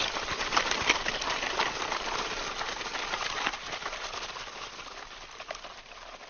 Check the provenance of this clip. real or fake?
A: real